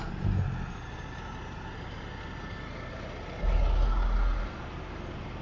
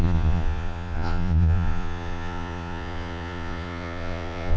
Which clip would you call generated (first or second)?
second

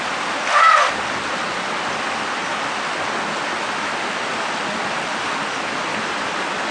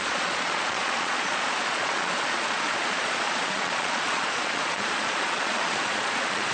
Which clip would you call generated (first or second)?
second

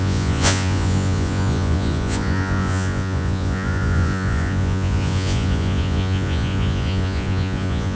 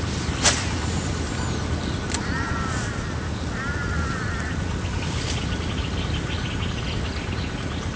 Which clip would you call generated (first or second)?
first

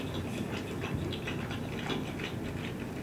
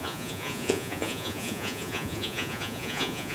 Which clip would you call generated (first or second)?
second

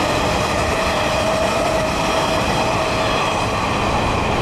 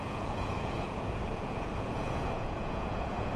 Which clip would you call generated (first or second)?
second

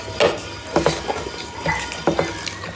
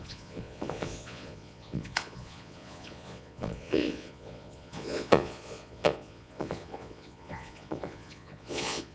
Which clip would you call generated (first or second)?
second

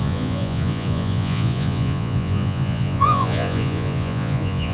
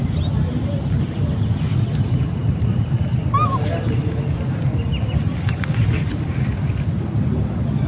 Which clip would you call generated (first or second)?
first